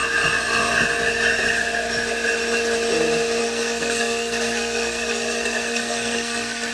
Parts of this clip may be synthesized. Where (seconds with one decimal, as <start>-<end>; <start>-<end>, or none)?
3.4-6.7